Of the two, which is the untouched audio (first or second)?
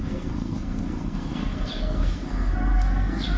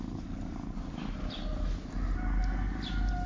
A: second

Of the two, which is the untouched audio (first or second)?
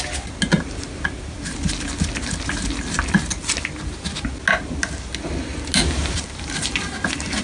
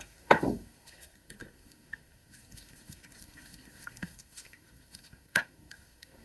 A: first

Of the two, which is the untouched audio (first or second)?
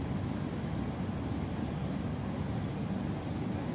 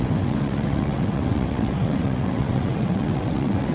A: first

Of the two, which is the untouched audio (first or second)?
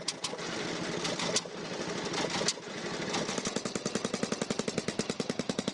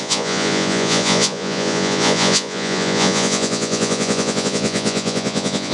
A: first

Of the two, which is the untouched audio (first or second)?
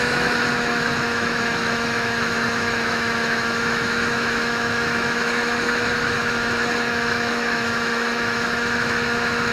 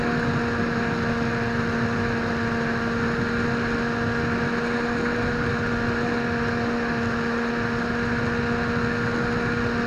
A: second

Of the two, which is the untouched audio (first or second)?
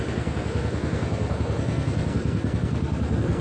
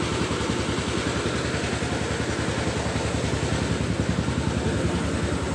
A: second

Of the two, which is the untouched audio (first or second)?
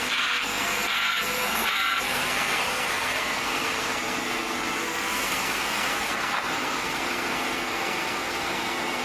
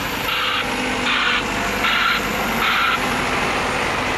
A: second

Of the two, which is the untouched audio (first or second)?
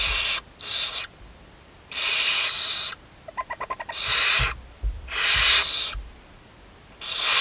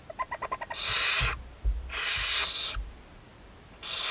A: second